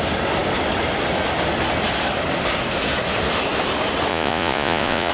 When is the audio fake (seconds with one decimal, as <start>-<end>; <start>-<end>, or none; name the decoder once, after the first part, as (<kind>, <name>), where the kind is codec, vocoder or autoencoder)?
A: 4.1-5.1 (vocoder, Vocos)